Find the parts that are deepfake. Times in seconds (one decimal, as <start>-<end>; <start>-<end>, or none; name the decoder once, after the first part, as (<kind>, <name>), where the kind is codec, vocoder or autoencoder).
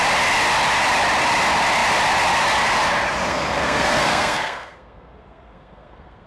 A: 3.3-6.3 (codec, SNAC)